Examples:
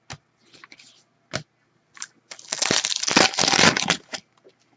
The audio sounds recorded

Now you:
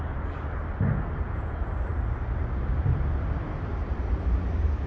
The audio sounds recorded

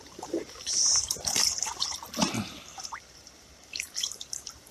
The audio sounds remade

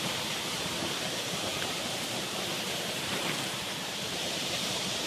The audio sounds remade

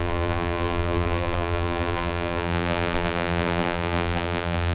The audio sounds remade